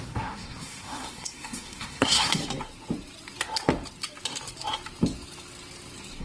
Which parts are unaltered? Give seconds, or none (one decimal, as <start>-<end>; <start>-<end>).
2.4-6.2